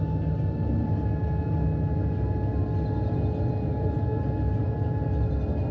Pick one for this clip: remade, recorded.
recorded